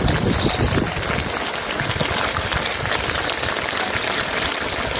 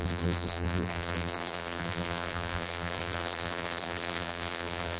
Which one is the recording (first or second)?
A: first